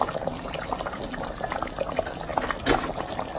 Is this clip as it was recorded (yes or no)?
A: yes